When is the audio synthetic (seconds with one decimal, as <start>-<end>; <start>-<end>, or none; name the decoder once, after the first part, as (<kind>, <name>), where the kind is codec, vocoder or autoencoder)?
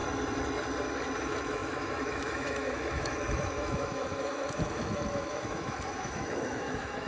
1.2-7.1 (autoencoder, DAC-VAE)